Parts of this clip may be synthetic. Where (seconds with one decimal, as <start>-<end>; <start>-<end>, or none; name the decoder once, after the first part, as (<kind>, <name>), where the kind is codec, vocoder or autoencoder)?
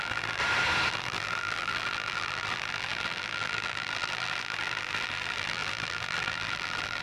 0.0-0.4 (vocoder, BigVGAN v2); 0.9-7.0